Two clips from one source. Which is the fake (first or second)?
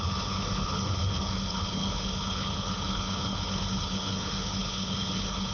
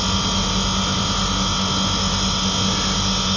first